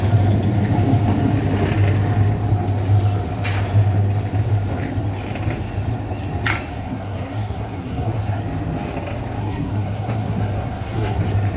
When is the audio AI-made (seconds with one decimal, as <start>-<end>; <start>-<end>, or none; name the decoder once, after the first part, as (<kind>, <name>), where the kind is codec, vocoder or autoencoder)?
6.7-8.4 (codec, SNAC); 9.4-11.2